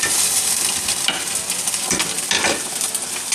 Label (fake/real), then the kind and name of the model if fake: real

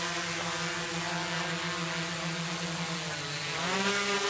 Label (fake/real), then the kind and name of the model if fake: real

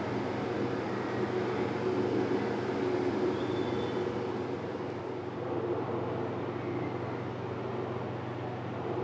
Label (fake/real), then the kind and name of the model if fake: real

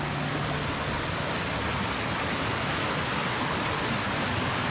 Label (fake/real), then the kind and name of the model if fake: real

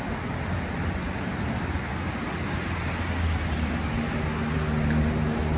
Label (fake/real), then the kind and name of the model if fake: real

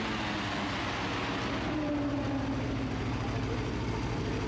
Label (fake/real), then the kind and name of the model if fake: real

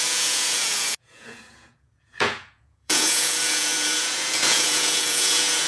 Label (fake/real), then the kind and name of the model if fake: fake, vocoder, Vocos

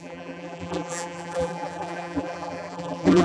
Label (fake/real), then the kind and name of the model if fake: fake, vocoder, BigVGAN v2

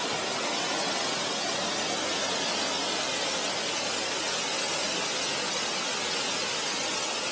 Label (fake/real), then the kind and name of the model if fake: real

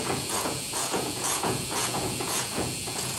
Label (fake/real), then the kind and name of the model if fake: fake, vocoder, Vocos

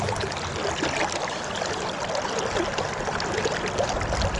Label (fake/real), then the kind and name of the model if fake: real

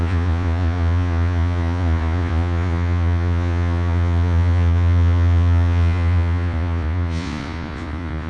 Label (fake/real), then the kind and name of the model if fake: fake, vocoder, Vocos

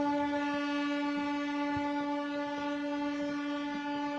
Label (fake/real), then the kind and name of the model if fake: real